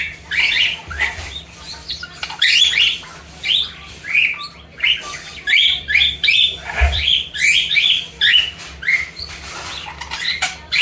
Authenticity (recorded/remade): remade